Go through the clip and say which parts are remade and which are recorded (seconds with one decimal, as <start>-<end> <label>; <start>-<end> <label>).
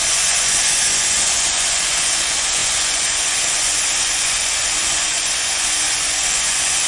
0.0-6.9 remade